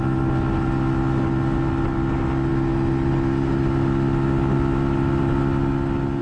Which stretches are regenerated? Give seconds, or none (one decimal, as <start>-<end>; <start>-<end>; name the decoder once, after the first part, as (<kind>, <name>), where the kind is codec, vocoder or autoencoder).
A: none